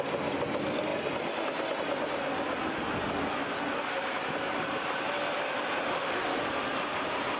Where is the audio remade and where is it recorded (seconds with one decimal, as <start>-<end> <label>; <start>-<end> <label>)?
0.0-5.9 recorded; 5.9-6.4 remade; 6.4-7.4 recorded